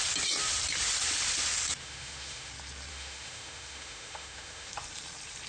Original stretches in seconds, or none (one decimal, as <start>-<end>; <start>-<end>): 0.0-1.8; 2.5-2.9; 4.7-5.5